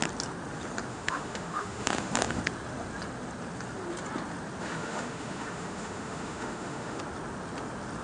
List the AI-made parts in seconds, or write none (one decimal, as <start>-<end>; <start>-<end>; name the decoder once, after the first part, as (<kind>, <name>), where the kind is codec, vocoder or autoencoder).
0.9-2.4 (autoencoder, DAC-VAE); 4.6-7.0